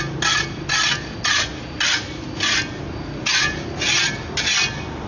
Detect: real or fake real